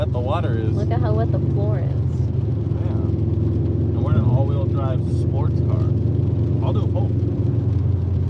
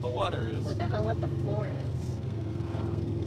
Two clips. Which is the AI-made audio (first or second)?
second